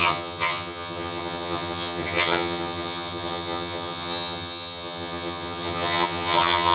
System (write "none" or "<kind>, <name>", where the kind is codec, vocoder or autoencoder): vocoder, HiFi-GAN